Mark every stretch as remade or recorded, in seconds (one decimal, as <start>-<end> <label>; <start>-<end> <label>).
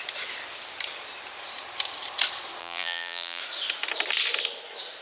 0.0-2.6 recorded; 2.6-3.4 remade; 3.4-5.0 recorded